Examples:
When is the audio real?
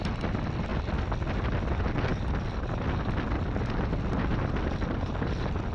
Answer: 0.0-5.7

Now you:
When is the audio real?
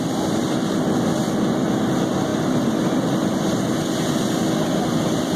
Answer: 0.0-0.4; 0.9-5.4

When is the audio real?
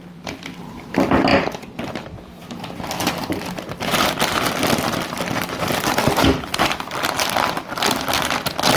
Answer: 0.0-1.3; 2.4-3.9; 6.1-6.5; 7.6-8.8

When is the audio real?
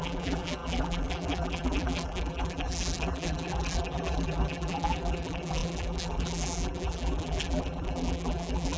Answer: none